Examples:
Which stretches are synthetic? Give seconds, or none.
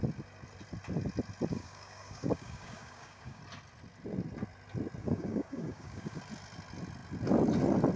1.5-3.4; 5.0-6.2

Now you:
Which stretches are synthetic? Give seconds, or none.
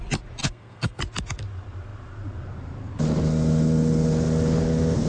0.4-1.0